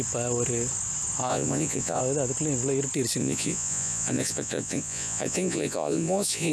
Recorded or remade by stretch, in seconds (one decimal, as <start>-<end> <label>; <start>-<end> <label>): 0.0-1.3 recorded; 1.3-2.0 remade; 2.0-3.2 recorded; 3.2-6.5 remade

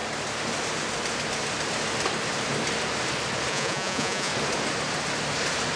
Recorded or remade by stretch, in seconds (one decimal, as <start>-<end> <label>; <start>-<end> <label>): 0.0-3.5 recorded; 3.5-4.3 remade; 4.3-5.8 recorded

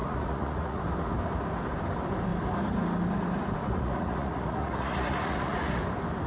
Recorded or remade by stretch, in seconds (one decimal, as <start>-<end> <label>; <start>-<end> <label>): 0.0-0.8 remade; 0.8-3.6 recorded; 3.6-5.8 remade; 5.8-6.3 recorded

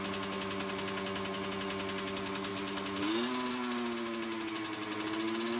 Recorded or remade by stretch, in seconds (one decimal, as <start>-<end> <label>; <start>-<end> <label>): 0.0-5.6 recorded

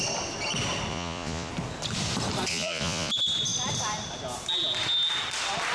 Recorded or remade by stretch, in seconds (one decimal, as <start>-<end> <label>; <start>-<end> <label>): 0.0-0.9 recorded; 0.9-1.5 remade; 1.5-2.5 recorded; 2.5-3.1 remade; 3.1-5.7 recorded